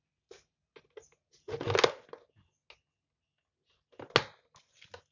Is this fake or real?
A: real